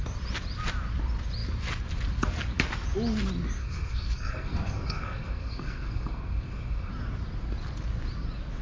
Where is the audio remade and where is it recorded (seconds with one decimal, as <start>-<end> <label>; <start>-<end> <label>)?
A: 0.0-3.6 recorded; 3.6-6.9 remade; 6.9-8.6 recorded